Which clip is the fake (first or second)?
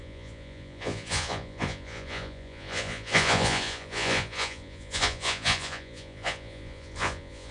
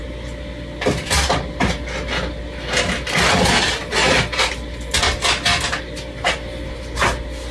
first